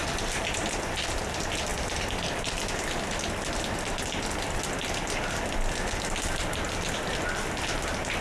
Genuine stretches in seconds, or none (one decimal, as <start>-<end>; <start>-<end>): 0.0-8.2

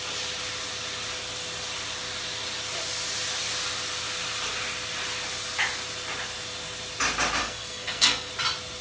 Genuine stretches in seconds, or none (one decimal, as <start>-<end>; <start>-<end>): 0.0-7.4; 8.3-8.8

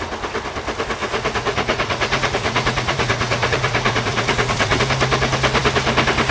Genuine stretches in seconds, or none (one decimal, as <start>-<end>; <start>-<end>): 0.0-1.0; 4.8-6.3

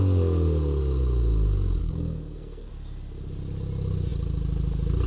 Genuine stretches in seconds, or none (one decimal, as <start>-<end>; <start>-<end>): 0.0-1.8; 2.7-5.1

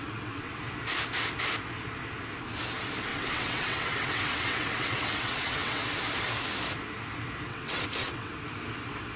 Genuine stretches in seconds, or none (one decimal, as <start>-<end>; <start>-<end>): 0.6-3.1; 5.8-7.5; 8.3-9.2